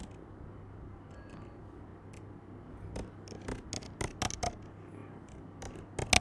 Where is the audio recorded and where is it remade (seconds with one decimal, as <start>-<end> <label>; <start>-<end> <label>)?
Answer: 0.0-6.2 recorded